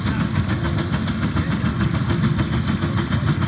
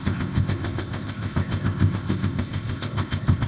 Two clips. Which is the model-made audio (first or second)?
second